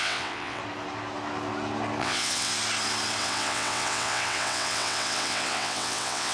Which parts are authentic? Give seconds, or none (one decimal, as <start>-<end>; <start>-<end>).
0.6-2.0; 2.5-3.2